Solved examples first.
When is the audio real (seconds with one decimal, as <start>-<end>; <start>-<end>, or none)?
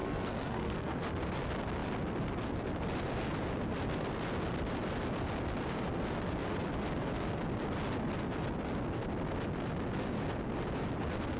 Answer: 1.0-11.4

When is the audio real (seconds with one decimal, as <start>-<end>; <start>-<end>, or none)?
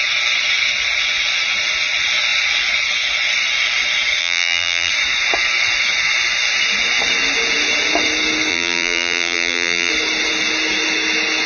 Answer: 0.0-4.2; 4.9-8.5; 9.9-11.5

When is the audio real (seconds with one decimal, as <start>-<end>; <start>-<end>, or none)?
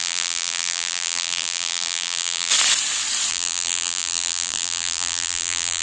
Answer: 2.5-3.3